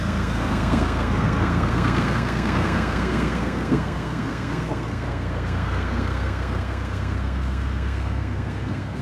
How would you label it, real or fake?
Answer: fake